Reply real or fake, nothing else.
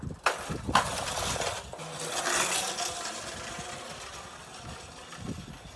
real